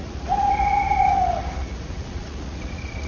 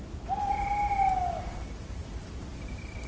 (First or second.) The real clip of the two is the second